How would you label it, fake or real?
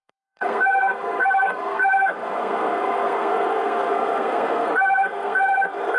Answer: fake